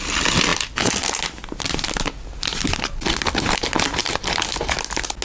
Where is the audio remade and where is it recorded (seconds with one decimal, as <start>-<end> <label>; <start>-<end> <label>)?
0.0-5.2 recorded